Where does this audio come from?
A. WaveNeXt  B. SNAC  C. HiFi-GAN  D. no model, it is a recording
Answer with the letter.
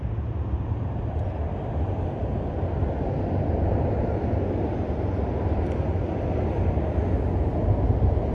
D